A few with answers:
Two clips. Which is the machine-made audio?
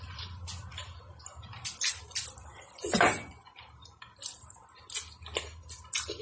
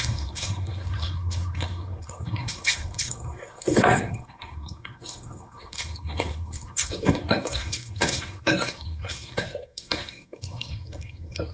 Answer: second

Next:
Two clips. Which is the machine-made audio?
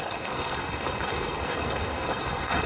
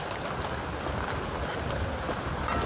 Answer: first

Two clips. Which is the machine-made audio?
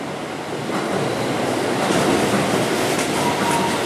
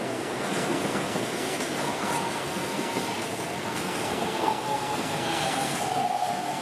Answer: second